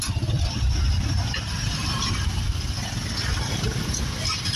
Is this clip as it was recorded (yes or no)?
yes